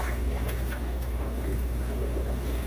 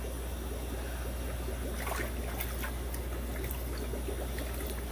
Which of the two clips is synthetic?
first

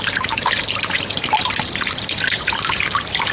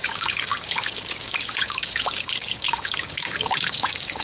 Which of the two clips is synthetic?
second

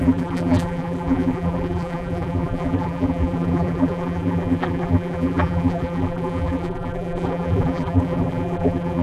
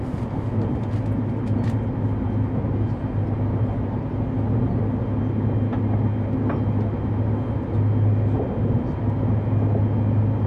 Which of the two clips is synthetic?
first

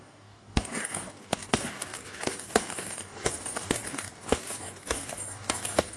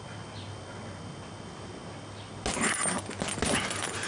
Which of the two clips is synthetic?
first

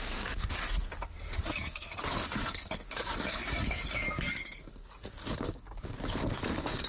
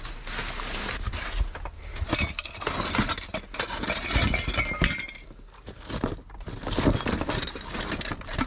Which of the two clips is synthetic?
first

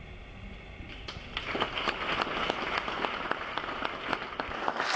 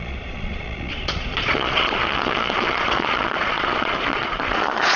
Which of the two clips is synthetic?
second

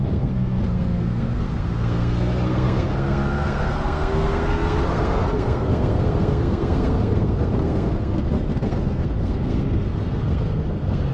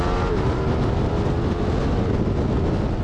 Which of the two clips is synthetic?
first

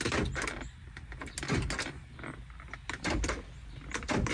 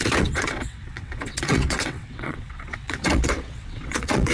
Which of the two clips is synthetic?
second